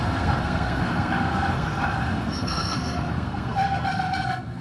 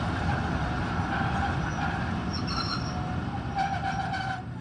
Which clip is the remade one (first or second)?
first